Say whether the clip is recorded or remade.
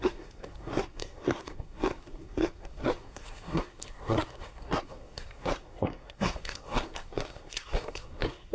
remade